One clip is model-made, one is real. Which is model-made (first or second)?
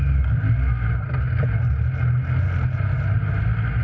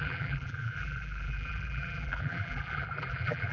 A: second